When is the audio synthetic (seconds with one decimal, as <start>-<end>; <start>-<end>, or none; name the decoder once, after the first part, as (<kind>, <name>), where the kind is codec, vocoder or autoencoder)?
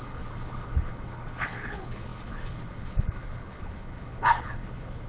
0.0-5.1 (codec, HILCodec)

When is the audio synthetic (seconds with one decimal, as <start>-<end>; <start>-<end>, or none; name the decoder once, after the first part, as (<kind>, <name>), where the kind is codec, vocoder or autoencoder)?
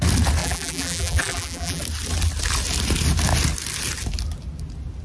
0.4-1.8 (vocoder, BigVGAN v2)